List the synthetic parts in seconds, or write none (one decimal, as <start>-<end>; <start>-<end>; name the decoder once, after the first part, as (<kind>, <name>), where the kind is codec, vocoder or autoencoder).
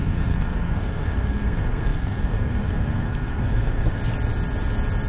0.0-4.0 (codec, SNAC)